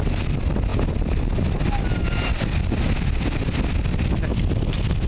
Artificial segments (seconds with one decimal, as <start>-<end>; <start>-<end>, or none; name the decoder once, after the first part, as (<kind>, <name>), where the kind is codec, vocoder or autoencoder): none